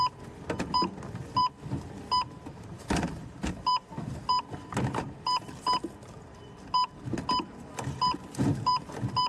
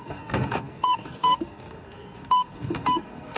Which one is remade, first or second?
second